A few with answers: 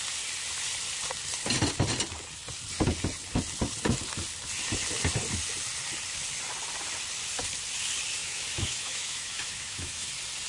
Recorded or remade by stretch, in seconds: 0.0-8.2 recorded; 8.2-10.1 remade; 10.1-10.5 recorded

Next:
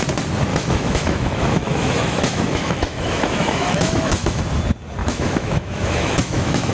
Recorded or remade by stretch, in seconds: 0.0-0.5 recorded; 0.5-4.4 remade; 4.4-5.0 recorded; 5.0-6.7 remade

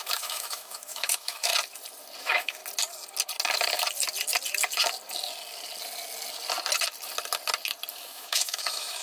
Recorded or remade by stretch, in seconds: 0.0-1.5 remade; 1.5-2.2 recorded; 2.2-2.6 remade; 2.6-7.9 recorded; 7.9-9.0 remade

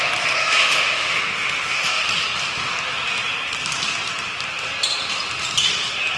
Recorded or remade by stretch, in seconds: 0.0-0.4 recorded; 0.4-2.1 remade; 2.1-6.2 recorded